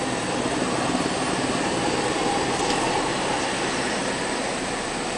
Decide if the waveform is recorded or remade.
recorded